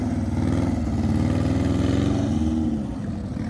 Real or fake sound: real